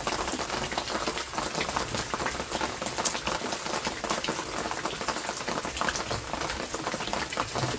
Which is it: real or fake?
real